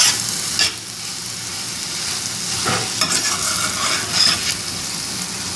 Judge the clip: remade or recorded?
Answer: recorded